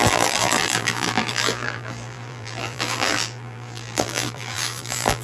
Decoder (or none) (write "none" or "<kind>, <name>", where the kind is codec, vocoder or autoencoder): vocoder, BigVGAN v2